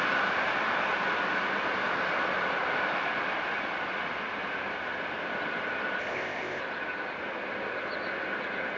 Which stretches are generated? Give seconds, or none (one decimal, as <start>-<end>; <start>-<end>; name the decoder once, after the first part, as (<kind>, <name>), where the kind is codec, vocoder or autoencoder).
6.0-6.6 (codec, ZipCodec)